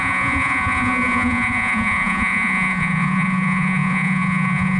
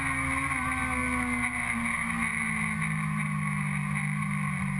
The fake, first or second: first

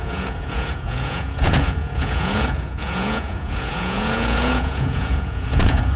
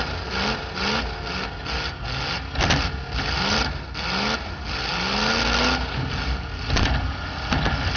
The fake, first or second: first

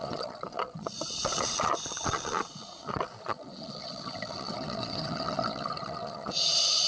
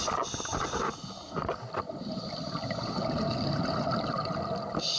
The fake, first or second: first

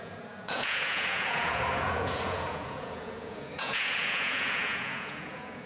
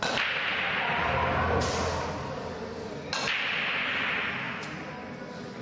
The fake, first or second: first